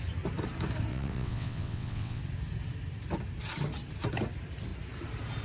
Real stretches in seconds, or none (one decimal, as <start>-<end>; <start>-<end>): 0.0-0.9; 2.2-5.4